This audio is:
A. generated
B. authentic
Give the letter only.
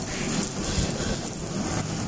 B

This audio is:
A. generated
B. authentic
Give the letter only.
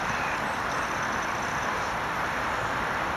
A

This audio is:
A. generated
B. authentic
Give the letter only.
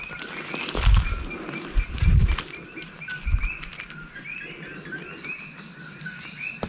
B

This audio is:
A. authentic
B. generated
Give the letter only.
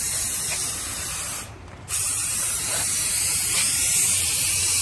B